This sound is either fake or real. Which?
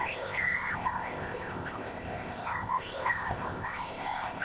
fake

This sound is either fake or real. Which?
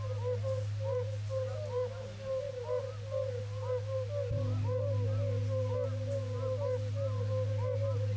real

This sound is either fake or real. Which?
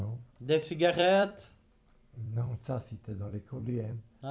fake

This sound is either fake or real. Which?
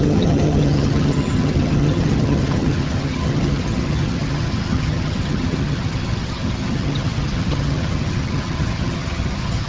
fake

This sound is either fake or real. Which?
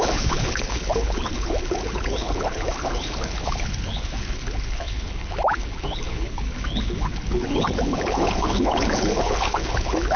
fake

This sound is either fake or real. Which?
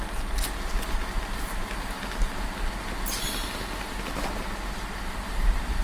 real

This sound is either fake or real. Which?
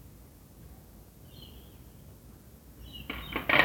real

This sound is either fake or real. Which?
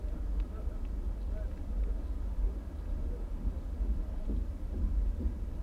real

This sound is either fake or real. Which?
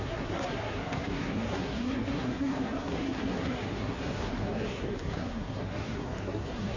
fake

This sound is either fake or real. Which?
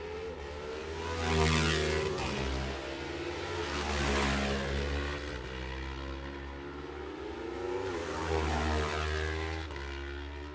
real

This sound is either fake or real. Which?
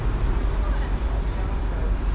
real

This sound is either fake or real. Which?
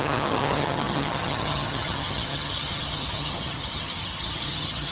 fake